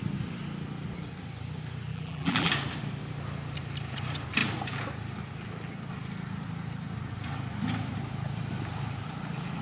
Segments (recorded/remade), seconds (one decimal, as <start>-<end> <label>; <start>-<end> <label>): 0.0-1.9 recorded; 1.9-2.5 remade; 2.5-9.6 recorded